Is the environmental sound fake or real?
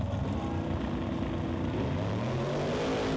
real